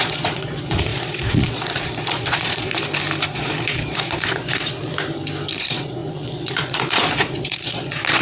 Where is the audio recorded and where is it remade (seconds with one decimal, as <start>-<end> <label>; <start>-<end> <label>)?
0.0-2.8 remade; 2.8-3.3 recorded; 3.3-4.9 remade; 4.9-5.6 recorded; 5.6-8.2 remade